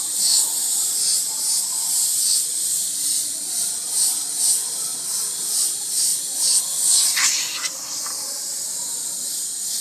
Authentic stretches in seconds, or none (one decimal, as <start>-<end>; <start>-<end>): 0.0-0.6; 4.4-9.8